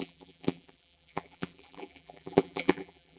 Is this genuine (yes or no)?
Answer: no